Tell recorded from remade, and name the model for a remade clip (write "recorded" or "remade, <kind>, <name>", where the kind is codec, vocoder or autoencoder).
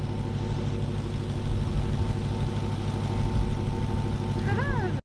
recorded